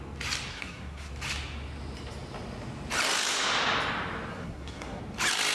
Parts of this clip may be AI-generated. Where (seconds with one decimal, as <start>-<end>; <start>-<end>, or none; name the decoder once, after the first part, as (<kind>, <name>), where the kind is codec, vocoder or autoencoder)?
0.5-1.1 (codec, SNAC); 4.3-5.0